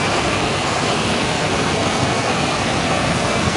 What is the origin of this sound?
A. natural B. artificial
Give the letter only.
B